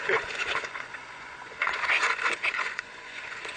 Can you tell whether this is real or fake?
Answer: fake